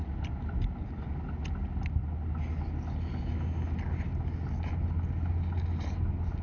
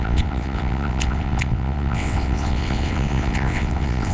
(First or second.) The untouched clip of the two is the first